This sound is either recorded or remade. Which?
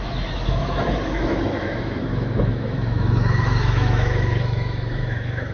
remade